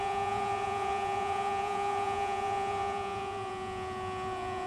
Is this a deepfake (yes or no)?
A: yes